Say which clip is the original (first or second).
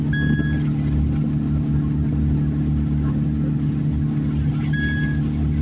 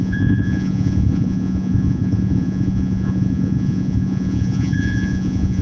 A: first